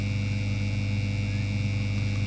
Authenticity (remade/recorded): recorded